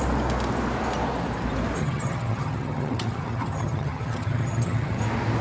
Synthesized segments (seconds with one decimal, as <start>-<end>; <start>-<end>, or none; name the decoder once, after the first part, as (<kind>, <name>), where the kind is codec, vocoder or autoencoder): 1.8-5.0 (vocoder, HiFi-GAN)

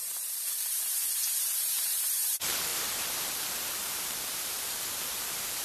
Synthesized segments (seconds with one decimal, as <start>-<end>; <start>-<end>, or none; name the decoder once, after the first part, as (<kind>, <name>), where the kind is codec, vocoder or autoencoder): 0.0-2.7 (vocoder, BigVGAN v2); 3.7-5.6

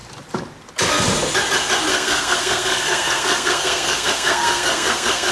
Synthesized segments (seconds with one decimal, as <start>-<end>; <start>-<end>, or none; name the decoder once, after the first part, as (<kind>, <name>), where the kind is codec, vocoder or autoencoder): 1.9-5.3 (codec, SNAC)

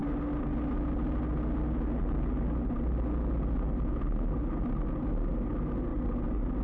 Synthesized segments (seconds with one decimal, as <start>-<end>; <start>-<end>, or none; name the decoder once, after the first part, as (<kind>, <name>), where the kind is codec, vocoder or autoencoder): none

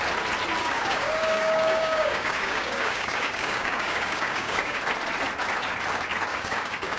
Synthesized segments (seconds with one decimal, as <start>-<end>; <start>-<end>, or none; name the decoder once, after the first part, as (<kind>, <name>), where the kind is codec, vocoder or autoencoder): 0.6-4.8 (codec, DAC); 6.3-7.0

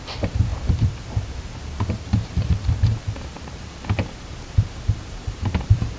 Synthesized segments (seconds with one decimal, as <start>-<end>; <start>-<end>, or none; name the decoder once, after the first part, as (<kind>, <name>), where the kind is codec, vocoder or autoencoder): 0.0-6.0 (vocoder, BigVGAN v2)